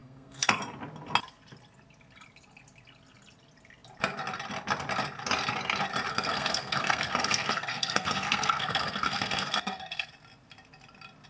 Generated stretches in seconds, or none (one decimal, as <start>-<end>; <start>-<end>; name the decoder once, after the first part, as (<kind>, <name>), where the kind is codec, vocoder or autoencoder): 0.0-0.6 (codec, SNAC); 6.1-10.1